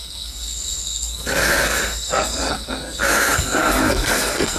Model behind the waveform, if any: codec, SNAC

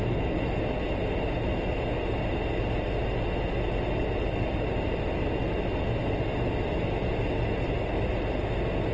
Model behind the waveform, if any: none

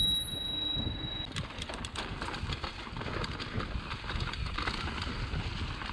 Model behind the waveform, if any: none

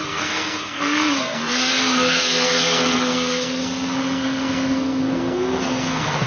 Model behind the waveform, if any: codec, SNAC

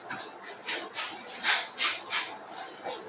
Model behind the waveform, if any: none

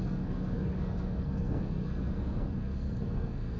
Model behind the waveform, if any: codec, SNAC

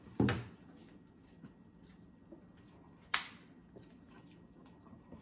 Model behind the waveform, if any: none